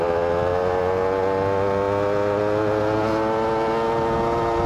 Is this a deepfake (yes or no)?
no